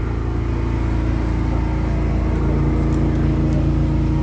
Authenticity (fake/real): real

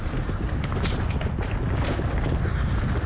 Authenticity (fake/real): real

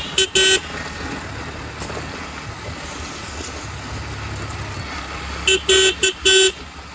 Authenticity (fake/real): real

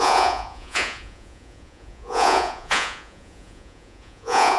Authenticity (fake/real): fake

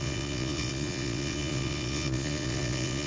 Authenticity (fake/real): fake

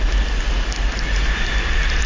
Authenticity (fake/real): real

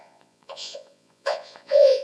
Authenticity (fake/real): fake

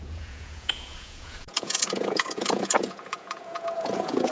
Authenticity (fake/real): fake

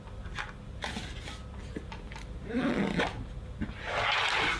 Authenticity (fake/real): real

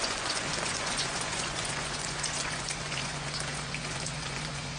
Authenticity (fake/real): fake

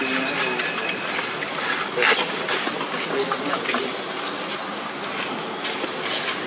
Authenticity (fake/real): real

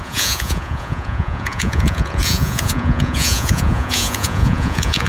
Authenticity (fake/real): fake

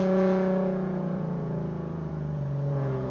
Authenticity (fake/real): fake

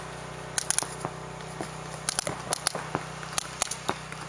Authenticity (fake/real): real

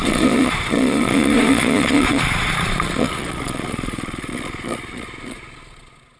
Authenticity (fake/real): fake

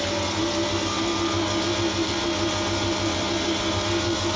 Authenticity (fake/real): real